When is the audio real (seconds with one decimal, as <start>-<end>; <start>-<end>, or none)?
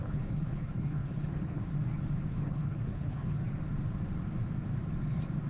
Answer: 1.6-2.3; 3.4-5.5